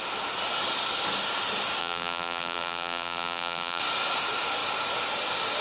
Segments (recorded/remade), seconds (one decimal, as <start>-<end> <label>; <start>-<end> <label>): 0.0-1.8 recorded; 1.8-3.8 remade; 3.8-5.6 recorded